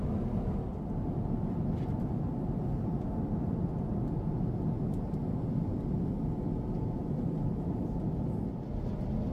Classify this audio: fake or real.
real